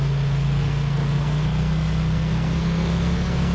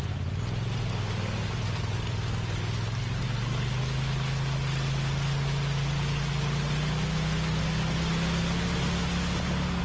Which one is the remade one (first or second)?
first